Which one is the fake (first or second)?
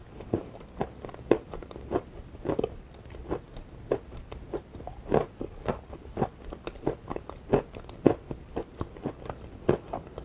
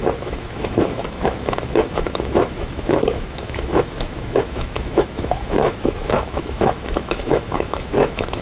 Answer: second